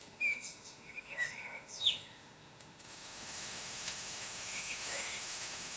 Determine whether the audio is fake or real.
fake